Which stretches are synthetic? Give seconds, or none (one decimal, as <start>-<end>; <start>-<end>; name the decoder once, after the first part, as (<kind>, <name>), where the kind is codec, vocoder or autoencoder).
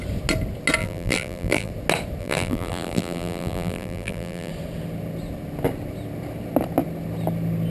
0.8-1.7 (vocoder, BigVGAN v2); 2.2-4.5